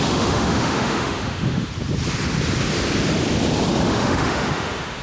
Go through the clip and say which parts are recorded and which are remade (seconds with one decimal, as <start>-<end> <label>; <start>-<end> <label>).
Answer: 0.0-1.7 remade; 1.7-3.7 recorded; 3.7-5.0 remade